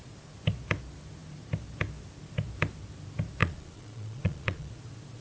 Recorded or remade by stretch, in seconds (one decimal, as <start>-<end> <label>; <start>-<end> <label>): 0.0-3.4 recorded; 3.4-4.7 remade; 4.7-5.2 recorded